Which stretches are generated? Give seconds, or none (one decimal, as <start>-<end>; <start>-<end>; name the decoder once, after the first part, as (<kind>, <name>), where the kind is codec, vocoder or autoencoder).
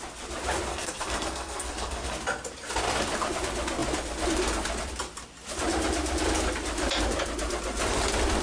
0.7-2.1 (codec, SNAC)